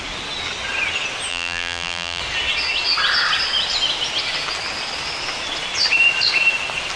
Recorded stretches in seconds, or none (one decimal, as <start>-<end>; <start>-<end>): 0.0-1.3; 2.2-7.0